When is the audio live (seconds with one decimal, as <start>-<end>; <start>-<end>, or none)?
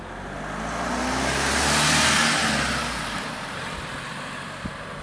0.0-2.7; 3.7-5.0